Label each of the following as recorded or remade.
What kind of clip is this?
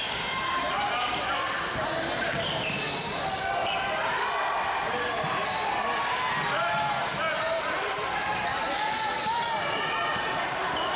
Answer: recorded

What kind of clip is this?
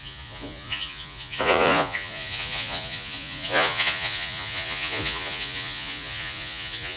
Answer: remade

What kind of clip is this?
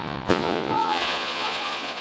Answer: remade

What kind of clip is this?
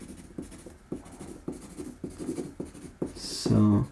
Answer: recorded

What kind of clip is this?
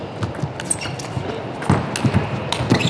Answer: recorded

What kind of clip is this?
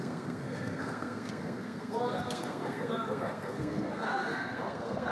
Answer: remade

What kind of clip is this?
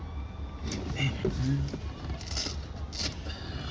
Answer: recorded